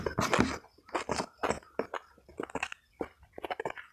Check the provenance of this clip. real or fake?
real